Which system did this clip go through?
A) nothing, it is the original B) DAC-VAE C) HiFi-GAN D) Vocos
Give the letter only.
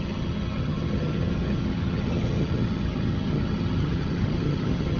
C